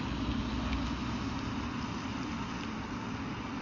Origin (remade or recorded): recorded